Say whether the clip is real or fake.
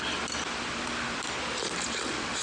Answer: real